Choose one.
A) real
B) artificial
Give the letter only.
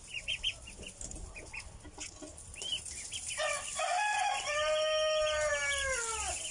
A